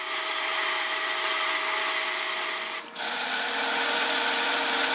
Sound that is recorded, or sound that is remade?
remade